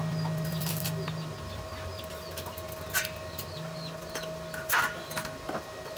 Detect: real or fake real